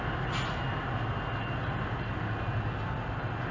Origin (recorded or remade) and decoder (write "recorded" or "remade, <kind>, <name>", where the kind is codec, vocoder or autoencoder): recorded